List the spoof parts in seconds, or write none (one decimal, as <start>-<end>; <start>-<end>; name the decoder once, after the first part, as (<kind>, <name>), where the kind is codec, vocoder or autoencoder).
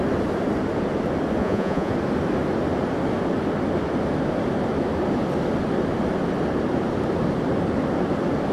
1.4-1.9 (vocoder, Vocos)